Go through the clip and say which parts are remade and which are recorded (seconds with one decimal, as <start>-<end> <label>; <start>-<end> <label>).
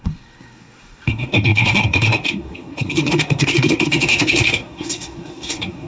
0.0-5.9 remade